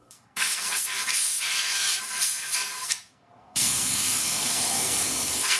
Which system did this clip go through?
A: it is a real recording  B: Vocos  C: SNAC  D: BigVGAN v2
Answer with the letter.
C